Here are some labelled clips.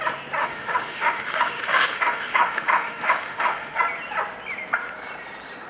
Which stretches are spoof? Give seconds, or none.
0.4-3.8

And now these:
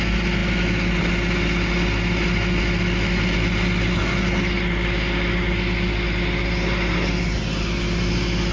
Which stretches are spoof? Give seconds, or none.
none

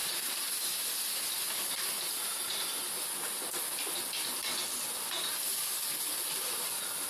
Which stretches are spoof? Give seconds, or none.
none

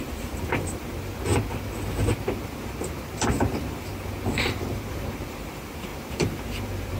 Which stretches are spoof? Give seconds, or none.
0.0-1.3; 2.4-3.9; 4.5-7.0

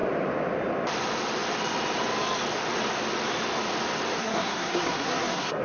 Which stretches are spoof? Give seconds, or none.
4.2-5.6

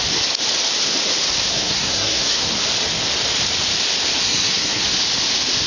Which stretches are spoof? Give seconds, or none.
1.5-2.5; 4.2-4.8

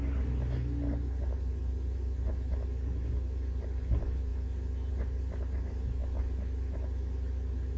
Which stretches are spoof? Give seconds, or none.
none

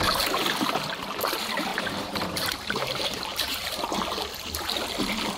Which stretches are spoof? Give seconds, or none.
1.7-4.0